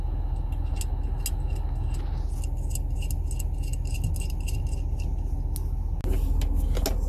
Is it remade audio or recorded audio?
recorded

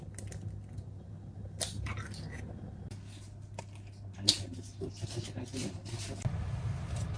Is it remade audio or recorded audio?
recorded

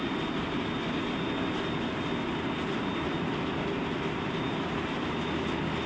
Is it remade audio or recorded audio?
recorded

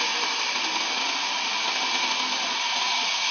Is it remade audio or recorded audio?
recorded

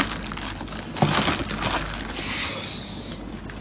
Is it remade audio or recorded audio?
recorded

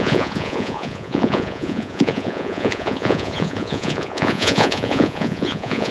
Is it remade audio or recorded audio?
remade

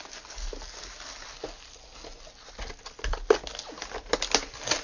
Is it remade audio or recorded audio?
recorded